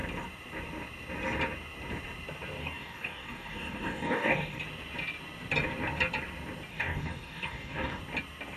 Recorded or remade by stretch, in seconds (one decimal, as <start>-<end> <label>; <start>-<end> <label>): 0.0-2.6 recorded; 2.6-4.6 remade; 4.6-6.7 recorded; 6.7-8.0 remade; 8.0-8.6 recorded